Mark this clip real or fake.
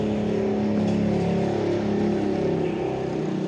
real